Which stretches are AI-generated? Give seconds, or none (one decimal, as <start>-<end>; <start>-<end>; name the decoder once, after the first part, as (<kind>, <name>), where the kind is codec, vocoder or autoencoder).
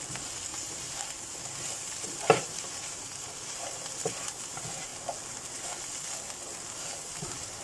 0.5-4.1 (vocoder, BigVGAN v2)